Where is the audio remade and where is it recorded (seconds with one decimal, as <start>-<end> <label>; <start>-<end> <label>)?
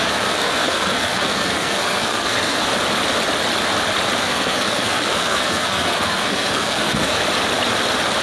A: 0.0-2.7 remade; 2.7-4.2 recorded; 4.2-7.2 remade; 7.2-8.2 recorded